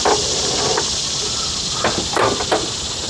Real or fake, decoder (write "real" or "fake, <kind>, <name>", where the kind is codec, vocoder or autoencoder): real